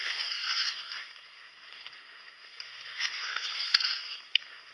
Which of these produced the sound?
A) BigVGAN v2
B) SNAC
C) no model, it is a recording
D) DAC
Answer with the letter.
B